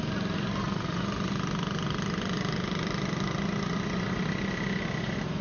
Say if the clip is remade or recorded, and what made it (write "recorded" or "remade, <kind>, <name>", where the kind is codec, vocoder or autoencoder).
recorded